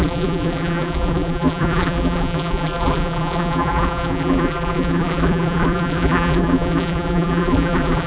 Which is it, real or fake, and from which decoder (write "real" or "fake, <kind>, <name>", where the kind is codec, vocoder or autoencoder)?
fake, vocoder, BigVGAN v2